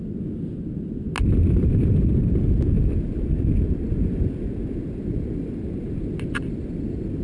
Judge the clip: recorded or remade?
recorded